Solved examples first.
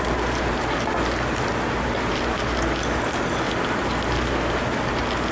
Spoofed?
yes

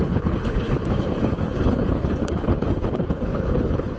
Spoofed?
yes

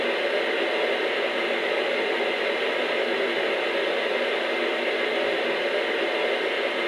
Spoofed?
no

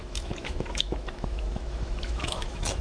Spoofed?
yes